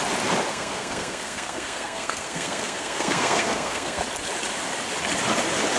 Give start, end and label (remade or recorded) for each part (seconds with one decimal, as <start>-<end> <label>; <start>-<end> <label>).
0.0-0.5 recorded; 0.5-4.0 remade; 4.0-5.8 recorded